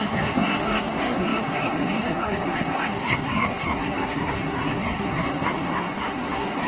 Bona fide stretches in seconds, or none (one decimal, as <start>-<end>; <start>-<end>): none